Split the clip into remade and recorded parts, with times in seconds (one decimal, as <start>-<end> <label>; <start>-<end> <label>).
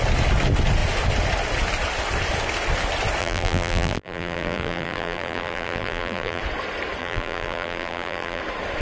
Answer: 0.0-3.2 recorded; 3.2-6.4 remade; 6.4-7.0 recorded; 7.0-8.4 remade; 8.4-8.8 recorded